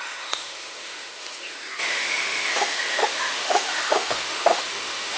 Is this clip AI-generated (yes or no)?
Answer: yes